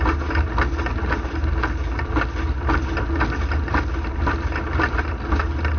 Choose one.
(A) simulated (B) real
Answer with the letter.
B